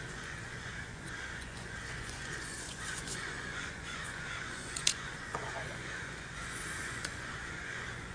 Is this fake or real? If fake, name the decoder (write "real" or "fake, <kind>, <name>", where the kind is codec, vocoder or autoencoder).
fake, vocoder, Vocos